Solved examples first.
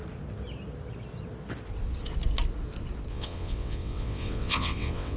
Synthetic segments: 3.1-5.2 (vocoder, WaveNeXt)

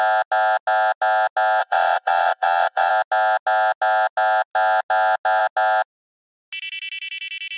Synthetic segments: 1.6-2.9 (vocoder, WaveNeXt)

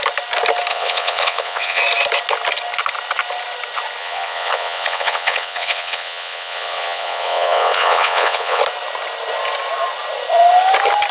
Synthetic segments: 0.7-1.8 (vocoder, WaveNeXt); 4.0-8.6

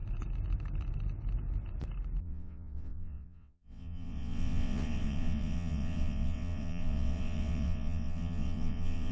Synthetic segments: 2.2-9.1 (vocoder, WaveNeXt)

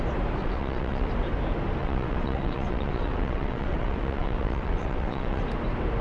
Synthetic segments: 0.4-1.1 (vocoder, WaveNeXt); 1.8-5.4